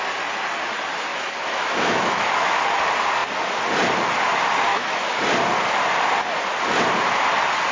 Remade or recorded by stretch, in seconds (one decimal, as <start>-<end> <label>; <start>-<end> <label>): 0.0-1.1 recorded; 1.1-2.6 remade; 2.6-4.7 recorded; 4.7-5.2 remade; 5.2-7.7 recorded